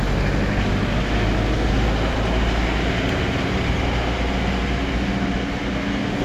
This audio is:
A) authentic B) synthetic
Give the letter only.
A